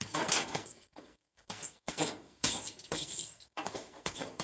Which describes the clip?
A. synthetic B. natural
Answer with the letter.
A